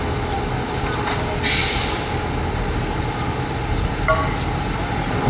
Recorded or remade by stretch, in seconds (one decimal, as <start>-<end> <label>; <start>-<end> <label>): 0.0-5.3 recorded